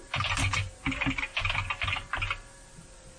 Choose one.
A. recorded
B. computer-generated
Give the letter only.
A